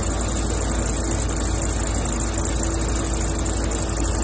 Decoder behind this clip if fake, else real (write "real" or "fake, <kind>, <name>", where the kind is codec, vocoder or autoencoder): real